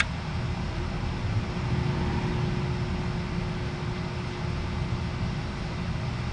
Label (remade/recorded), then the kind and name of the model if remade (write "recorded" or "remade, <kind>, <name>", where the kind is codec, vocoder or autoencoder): recorded